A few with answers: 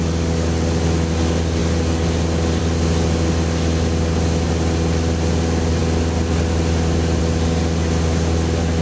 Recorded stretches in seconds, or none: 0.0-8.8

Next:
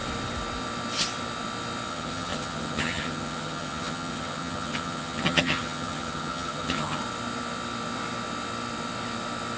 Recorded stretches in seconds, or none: 0.0-1.9; 7.0-9.6

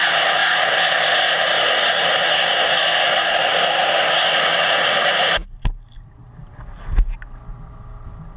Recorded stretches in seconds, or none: 0.0-8.4

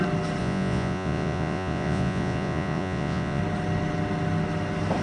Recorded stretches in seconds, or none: 0.0-0.4; 3.4-5.0

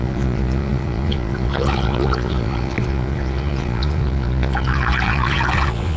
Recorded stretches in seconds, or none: none